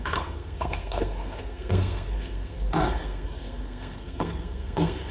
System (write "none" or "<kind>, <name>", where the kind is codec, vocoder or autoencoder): codec, SNAC